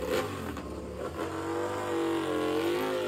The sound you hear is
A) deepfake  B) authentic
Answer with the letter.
B